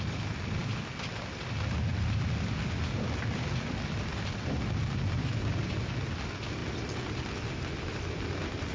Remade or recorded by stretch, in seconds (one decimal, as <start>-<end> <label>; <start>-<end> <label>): 0.0-8.7 recorded